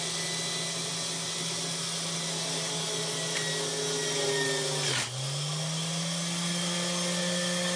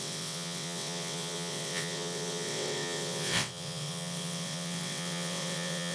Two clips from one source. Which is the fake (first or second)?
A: second